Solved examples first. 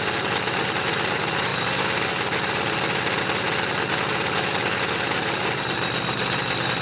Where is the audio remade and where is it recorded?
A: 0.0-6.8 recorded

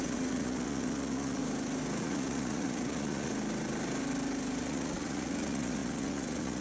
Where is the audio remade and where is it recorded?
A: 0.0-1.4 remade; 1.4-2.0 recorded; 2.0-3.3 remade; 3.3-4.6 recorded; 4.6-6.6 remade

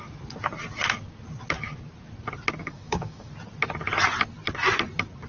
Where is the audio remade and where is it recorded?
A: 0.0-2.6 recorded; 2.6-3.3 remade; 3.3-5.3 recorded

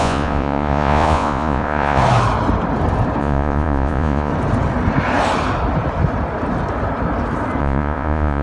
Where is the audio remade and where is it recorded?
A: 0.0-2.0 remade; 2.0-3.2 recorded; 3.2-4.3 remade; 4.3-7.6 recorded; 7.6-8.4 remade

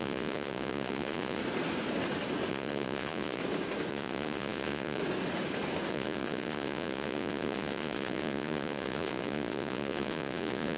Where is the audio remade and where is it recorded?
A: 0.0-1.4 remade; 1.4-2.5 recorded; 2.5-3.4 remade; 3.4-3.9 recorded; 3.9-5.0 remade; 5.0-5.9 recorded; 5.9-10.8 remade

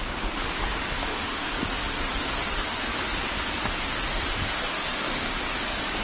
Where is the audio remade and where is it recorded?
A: 0.0-2.9 remade; 2.9-4.4 recorded; 4.4-6.0 remade

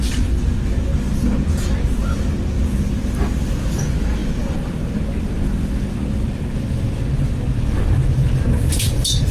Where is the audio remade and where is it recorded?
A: 0.0-9.3 recorded